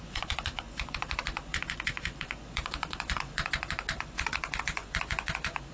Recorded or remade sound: remade